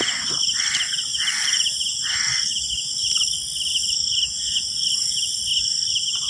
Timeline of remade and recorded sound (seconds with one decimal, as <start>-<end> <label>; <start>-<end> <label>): 0.0-1.1 recorded; 1.1-2.1 remade; 2.1-6.3 recorded